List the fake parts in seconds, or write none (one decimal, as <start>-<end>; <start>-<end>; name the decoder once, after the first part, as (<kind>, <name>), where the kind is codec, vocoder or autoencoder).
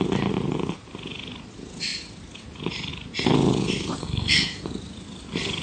4.0-4.6 (codec, SNAC)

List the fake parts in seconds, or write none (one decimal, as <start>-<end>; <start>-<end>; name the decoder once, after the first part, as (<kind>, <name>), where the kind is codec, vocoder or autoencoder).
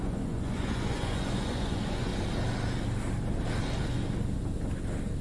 0.0-2.1 (vocoder, Vocos)